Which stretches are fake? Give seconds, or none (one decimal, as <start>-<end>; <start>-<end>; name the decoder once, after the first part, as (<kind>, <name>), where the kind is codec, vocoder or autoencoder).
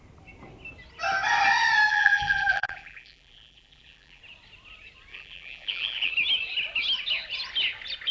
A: 1.9-4.2 (vocoder, BigVGAN v2); 5.1-6.1